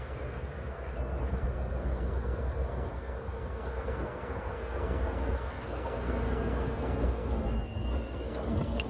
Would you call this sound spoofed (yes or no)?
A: yes